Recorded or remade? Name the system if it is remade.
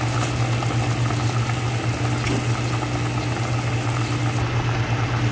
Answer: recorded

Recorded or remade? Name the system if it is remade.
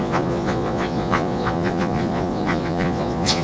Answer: remade, vocoder, Vocos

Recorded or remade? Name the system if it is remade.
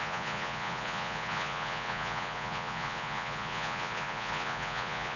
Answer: remade, vocoder, Vocos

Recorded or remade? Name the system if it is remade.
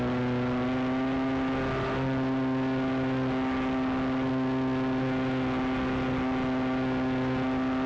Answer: recorded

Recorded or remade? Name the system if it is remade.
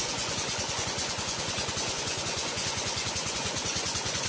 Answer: remade, vocoder, Vocos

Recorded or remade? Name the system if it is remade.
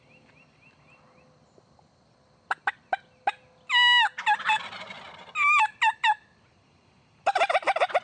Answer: recorded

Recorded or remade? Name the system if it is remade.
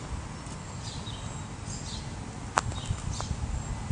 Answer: recorded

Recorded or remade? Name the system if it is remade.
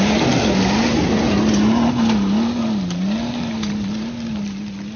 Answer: recorded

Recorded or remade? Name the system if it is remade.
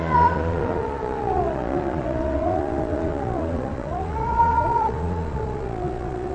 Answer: remade, vocoder, Vocos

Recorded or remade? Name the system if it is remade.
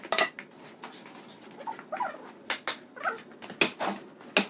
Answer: recorded